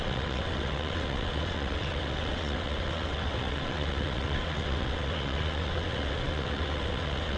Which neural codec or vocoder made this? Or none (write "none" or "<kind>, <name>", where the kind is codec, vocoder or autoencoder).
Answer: vocoder, WaveNeXt